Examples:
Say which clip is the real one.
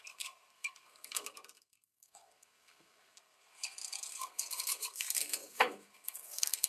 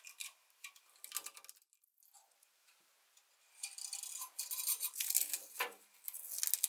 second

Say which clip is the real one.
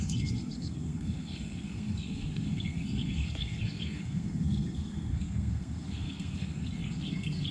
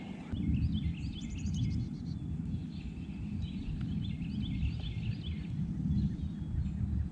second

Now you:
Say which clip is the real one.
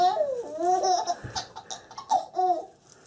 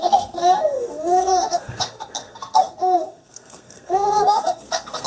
first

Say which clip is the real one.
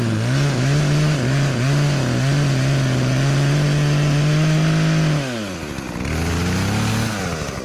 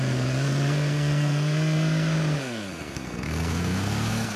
first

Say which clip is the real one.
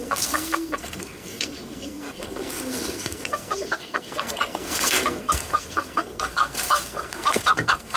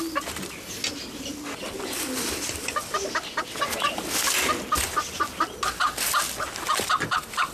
second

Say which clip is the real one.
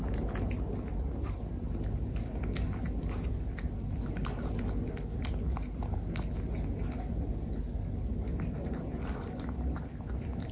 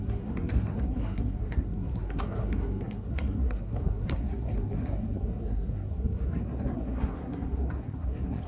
first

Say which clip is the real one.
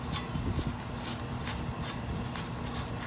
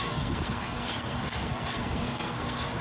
first